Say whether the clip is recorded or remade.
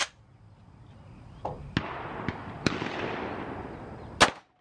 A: recorded